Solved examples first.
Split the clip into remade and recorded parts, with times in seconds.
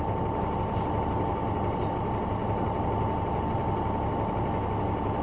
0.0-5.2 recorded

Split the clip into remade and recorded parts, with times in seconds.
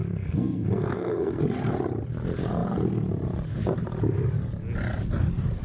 0.0-1.4 remade; 1.4-5.6 recorded